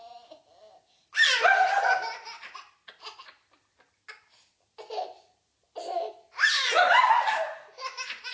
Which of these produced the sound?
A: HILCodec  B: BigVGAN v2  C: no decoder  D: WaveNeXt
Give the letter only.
C